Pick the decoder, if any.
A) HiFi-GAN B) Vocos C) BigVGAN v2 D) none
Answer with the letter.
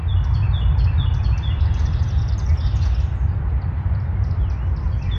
D